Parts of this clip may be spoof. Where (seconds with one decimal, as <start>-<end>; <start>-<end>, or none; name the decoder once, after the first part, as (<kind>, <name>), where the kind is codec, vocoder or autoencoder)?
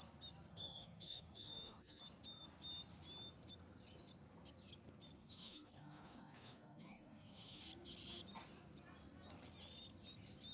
0.5-2.0 (autoencoder, DAC-VAE); 5.2-7.6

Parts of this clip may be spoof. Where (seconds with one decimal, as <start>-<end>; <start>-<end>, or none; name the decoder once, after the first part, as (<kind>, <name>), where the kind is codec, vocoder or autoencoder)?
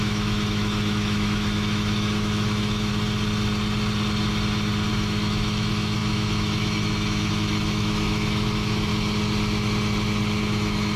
0.0-2.9 (autoencoder, DAC-VAE); 4.9-8.9; 10.4-11.0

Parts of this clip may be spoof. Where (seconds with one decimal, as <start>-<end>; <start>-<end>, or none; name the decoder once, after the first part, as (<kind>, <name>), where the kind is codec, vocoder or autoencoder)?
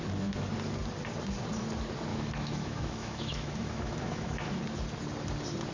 2.1-4.5 (autoencoder, DAC-VAE)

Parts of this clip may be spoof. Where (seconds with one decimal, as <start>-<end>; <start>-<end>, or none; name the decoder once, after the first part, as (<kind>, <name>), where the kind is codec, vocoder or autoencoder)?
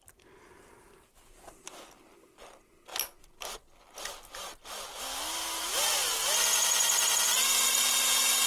none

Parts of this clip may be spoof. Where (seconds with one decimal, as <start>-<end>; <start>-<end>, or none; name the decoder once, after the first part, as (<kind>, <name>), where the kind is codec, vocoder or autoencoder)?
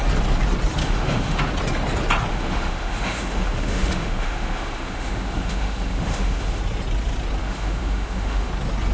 0.8-1.4 (autoencoder, DAC-VAE); 2.3-6.6; 7.4-8.5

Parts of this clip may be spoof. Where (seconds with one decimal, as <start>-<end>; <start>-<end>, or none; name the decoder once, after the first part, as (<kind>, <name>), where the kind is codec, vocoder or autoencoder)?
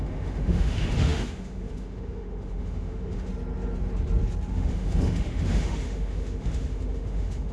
0.0-3.3 (autoencoder, DAC-VAE); 4.5-7.5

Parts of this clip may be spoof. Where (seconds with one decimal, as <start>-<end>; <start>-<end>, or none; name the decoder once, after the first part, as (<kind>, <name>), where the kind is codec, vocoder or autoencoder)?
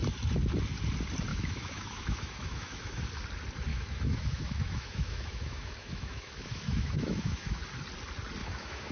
1.3-3.0 (autoencoder, DAC-VAE); 3.7-7.6; 8.4-8.9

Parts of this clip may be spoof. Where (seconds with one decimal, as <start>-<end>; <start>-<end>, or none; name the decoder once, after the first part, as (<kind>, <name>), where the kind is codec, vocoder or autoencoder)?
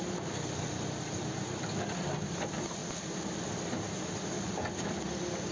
none